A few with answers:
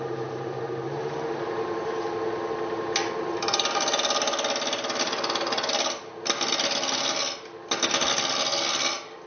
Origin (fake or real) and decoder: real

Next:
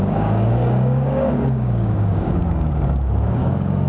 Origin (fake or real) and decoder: fake, codec, DAC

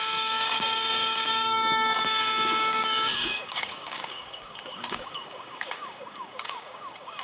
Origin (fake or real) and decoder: fake, codec, DAC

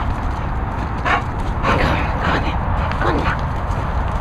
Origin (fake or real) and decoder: real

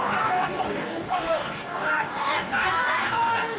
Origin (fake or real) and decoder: fake, codec, DAC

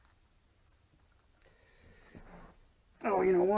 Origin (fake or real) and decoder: real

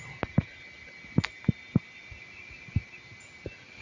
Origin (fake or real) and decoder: real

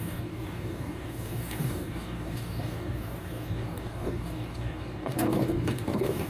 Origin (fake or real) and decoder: fake, codec, DAC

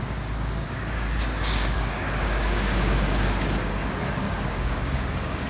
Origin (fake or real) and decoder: fake, codec, DAC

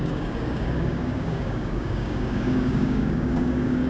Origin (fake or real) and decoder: fake, codec, DAC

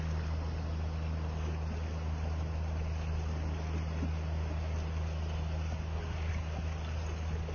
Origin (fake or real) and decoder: real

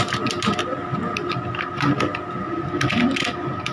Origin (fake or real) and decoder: real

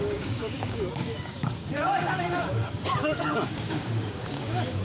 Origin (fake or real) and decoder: fake, codec, DAC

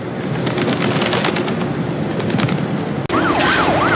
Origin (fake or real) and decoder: real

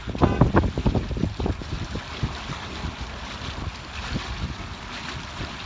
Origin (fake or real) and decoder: real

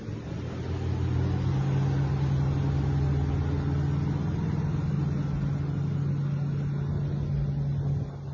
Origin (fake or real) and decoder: real